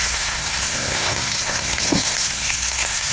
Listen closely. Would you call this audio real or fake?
fake